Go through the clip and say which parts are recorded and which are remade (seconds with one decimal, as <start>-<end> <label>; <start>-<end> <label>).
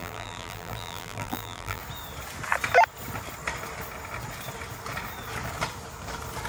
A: 0.0-1.8 remade; 1.8-6.5 recorded